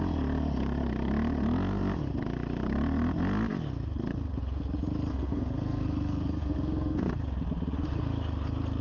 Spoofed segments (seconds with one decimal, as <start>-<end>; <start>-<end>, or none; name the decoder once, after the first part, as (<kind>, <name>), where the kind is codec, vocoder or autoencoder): 5.1-7.1 (codec, SNAC)

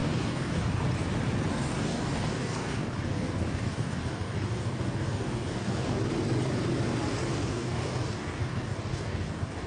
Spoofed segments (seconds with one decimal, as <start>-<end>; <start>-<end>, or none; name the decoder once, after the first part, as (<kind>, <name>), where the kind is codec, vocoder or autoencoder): 0.0-0.8 (codec, DAC); 1.5-6.0; 7.1-9.7